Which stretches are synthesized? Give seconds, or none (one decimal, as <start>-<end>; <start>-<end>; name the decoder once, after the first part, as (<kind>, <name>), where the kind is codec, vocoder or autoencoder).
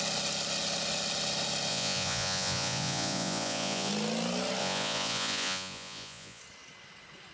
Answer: 1.7-3.9 (vocoder, Vocos); 4.6-6.4